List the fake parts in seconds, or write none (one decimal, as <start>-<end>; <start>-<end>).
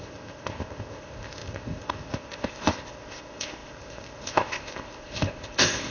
0.0-5.9